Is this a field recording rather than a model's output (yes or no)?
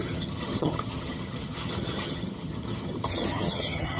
no